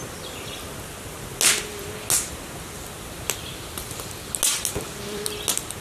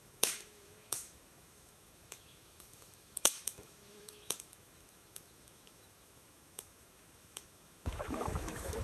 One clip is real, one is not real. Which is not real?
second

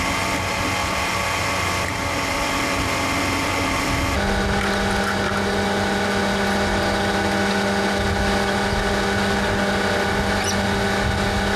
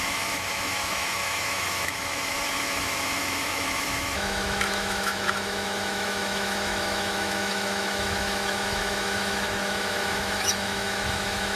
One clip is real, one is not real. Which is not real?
second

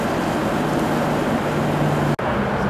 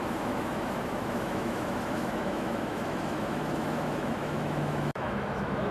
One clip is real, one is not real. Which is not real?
second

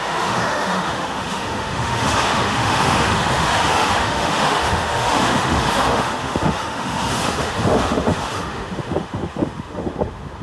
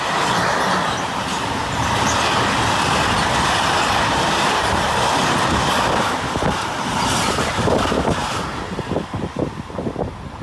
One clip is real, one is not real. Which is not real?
first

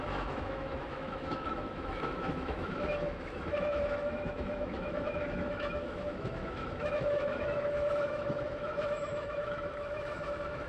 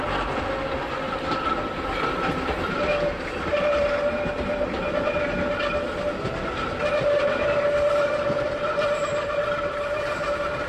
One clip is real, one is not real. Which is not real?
first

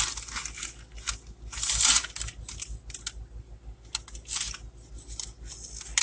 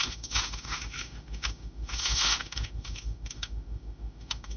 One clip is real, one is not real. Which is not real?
second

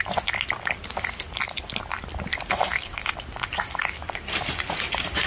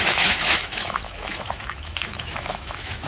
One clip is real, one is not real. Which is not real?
second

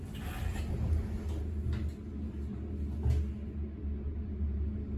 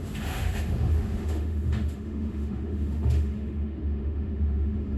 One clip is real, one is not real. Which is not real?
second